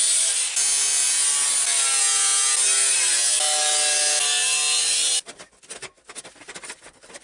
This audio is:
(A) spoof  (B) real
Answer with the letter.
B